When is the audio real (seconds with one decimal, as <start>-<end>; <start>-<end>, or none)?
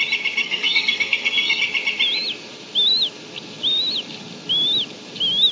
0.0-0.4; 1.6-5.5